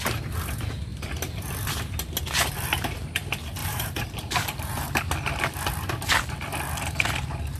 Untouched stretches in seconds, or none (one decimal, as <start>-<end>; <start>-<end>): 0.0-3.6; 5.1-7.6